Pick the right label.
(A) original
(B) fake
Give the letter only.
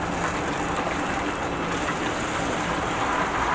A